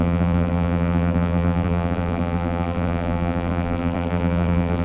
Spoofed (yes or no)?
yes